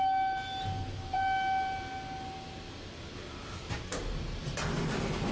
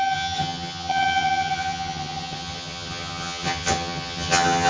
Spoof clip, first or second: second